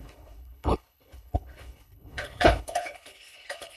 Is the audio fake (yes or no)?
yes